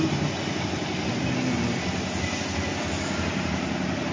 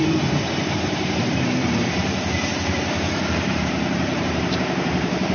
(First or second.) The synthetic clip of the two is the second